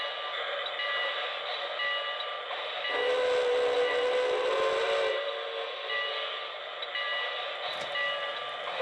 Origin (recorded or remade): recorded